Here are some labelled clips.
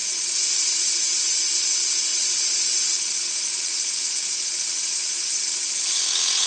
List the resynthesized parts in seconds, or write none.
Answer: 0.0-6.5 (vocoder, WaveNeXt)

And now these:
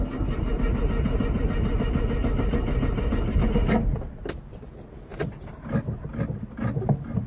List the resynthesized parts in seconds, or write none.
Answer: none

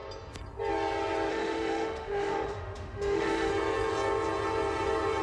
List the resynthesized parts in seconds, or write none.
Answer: 1.3-3.5 (autoencoder, DAC-VAE)